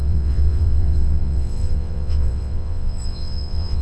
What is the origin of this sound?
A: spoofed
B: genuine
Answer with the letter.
A